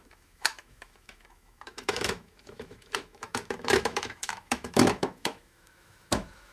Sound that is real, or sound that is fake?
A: fake